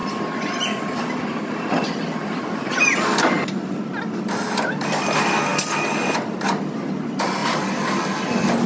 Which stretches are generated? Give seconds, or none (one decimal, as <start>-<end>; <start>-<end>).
2.2-2.9

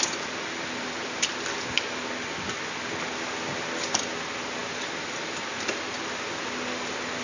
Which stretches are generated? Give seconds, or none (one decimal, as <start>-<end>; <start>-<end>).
none

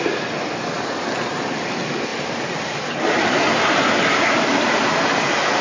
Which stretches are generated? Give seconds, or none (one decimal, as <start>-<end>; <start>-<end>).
2.1-3.9

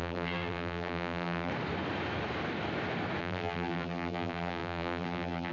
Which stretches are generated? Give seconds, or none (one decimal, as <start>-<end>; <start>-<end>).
0.0-1.5; 3.2-5.5

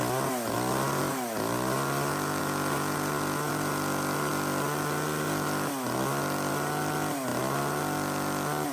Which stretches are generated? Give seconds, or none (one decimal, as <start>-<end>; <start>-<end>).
none

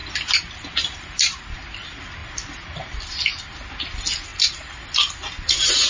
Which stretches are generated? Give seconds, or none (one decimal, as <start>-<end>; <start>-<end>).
0.0-1.4; 2.2-3.0